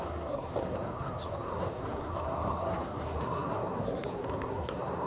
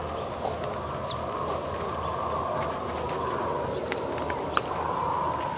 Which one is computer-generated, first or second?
first